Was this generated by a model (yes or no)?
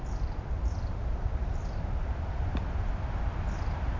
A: no